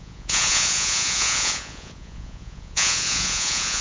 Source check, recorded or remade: remade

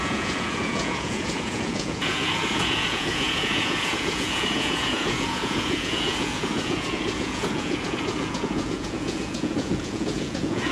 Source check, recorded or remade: remade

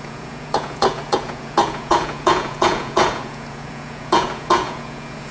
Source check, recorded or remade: remade